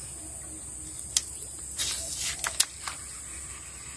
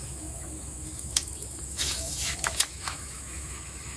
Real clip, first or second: first